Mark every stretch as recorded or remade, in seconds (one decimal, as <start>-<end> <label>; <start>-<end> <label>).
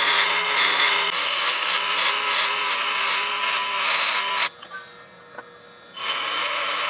0.0-1.2 recorded; 1.2-1.8 remade; 1.8-6.9 recorded